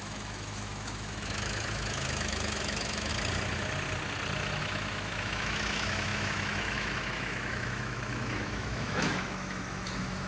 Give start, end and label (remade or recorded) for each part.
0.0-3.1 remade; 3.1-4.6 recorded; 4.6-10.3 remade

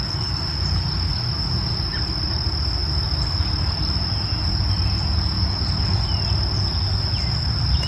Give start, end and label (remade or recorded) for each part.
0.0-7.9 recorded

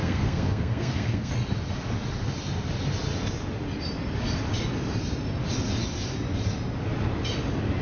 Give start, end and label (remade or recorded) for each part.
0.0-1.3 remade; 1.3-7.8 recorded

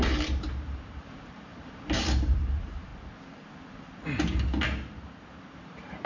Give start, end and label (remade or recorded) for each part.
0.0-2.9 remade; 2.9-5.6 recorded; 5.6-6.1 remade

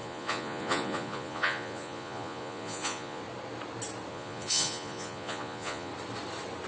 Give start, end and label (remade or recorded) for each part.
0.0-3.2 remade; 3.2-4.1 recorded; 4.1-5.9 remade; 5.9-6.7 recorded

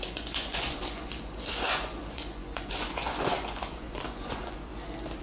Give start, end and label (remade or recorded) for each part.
0.0-4.7 remade; 4.7-5.2 recorded